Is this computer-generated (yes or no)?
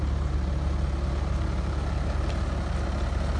no